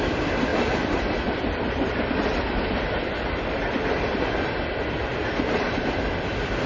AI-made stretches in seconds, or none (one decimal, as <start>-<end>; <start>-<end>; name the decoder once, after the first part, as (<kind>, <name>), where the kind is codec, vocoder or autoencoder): 0.5-4.2 (vocoder, BigVGAN v2)